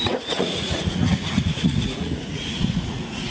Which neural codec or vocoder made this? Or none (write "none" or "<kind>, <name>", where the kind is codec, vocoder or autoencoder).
vocoder, Vocos